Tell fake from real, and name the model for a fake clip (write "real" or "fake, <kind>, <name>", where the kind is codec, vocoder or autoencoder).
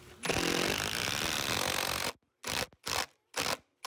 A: real